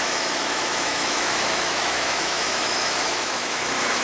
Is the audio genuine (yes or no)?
no